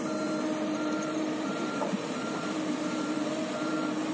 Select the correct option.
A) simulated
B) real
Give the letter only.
A